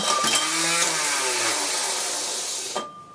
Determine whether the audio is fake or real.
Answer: real